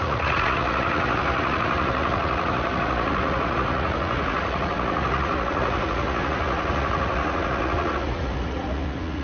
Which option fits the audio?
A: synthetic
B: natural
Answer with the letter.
A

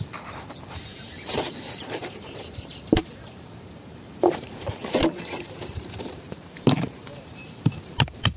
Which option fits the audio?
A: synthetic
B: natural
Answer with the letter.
A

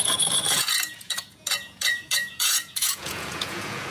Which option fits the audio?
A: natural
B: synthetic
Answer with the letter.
B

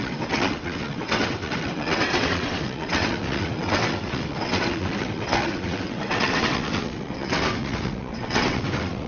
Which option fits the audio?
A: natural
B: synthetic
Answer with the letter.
B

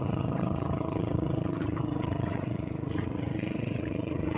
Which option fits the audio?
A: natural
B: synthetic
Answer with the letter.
B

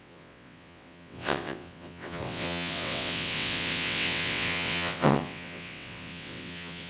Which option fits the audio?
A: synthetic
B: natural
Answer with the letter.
A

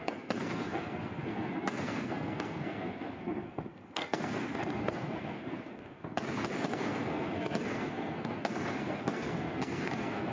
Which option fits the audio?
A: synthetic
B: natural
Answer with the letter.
A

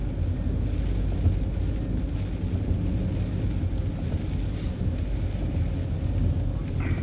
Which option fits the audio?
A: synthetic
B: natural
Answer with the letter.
B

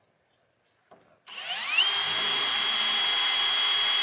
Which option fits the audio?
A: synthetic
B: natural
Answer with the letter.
B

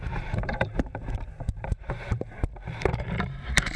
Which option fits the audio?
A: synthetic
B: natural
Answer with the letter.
A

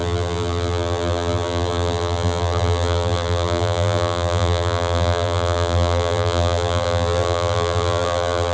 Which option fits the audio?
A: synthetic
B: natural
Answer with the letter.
A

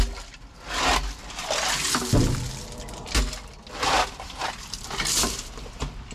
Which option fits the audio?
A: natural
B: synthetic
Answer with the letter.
A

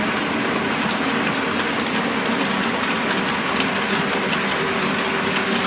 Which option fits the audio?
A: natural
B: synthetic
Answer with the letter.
A